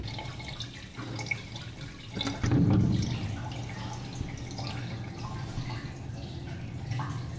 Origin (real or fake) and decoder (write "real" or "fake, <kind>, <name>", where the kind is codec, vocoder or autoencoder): real